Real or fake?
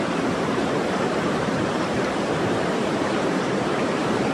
fake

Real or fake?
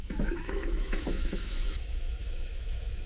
fake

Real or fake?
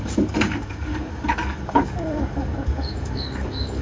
fake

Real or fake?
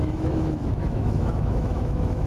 fake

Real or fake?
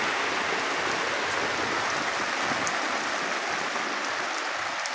real